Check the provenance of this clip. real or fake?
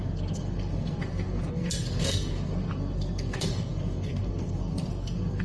fake